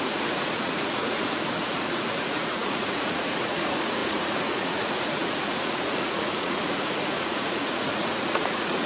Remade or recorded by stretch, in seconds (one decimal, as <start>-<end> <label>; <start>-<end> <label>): 0.0-8.9 remade